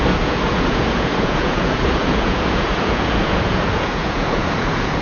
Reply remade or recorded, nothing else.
remade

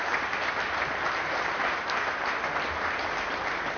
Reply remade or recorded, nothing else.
recorded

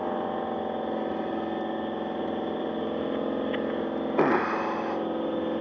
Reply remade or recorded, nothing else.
recorded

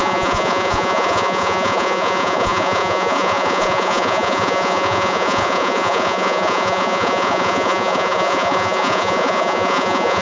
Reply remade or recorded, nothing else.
remade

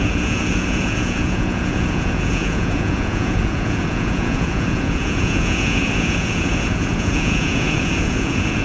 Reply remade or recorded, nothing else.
remade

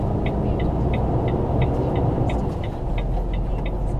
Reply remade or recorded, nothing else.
recorded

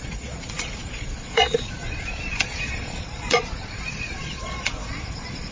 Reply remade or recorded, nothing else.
remade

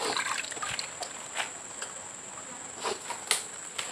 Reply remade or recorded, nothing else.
recorded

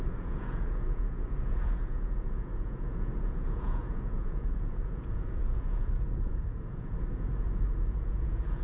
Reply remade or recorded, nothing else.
remade